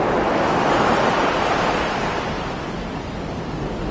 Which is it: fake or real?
real